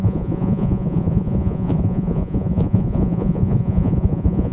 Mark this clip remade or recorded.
remade